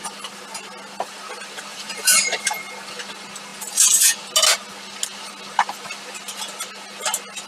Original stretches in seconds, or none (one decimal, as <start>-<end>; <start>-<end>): 0.0-1.7; 2.6-7.5